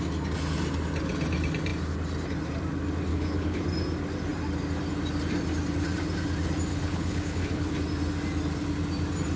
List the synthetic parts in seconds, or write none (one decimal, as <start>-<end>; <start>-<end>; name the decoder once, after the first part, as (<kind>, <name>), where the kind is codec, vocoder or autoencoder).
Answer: 3.1-3.6 (codec, HILCodec); 6.7-7.7